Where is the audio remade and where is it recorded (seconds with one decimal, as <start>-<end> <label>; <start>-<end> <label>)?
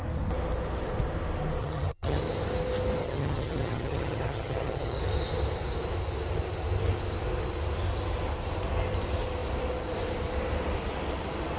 0.0-1.6 recorded; 1.6-2.2 remade; 2.2-3.0 recorded; 3.0-5.0 remade; 5.0-11.6 recorded